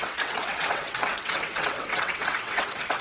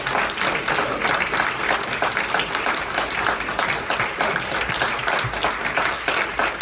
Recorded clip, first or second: second